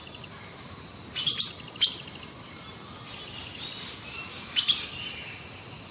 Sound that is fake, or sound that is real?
real